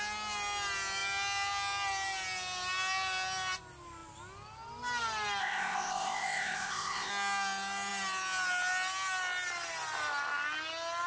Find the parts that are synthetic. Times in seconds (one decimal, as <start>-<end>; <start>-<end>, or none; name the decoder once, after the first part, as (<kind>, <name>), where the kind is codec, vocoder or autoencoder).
5.4-7.1 (codec, ZipCodec)